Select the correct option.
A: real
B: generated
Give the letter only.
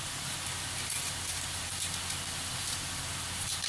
B